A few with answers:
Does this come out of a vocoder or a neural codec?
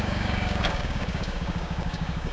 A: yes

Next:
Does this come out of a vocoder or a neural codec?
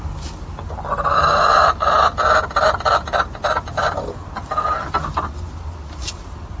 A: no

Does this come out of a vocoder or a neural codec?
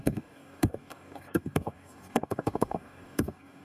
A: yes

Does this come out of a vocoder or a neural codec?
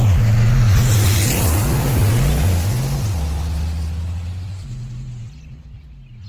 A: no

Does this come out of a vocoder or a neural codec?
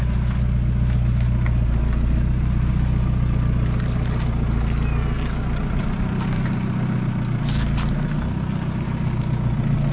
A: no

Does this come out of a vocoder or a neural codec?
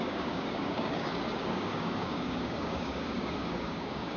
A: yes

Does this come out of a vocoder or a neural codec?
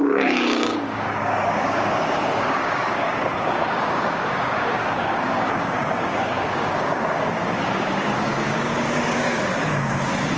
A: yes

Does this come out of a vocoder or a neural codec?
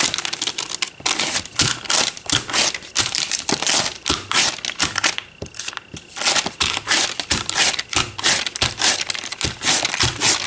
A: no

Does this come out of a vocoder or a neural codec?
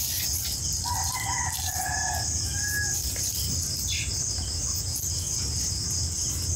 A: no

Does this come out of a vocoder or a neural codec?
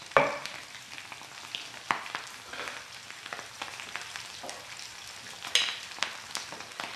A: no